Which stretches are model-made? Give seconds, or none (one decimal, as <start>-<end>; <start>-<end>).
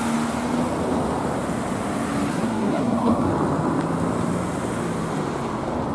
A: 2.3-3.3